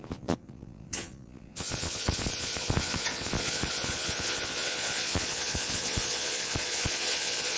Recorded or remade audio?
remade